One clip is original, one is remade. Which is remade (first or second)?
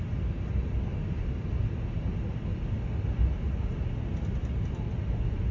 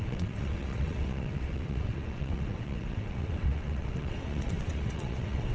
second